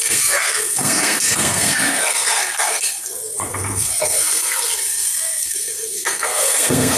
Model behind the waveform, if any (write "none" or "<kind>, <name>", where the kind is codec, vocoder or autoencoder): codec, SNAC